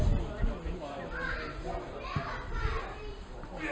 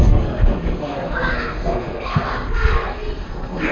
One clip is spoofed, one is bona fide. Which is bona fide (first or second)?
first